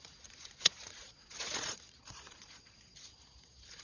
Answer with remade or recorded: remade